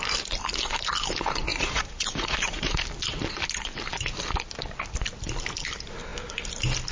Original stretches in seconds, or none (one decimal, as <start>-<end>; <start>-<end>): 0.0-1.5; 2.8-6.9